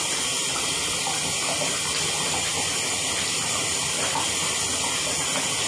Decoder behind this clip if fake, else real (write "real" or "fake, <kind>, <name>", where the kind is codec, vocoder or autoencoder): real